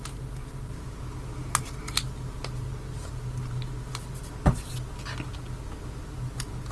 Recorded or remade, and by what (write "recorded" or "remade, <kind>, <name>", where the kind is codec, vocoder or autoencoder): recorded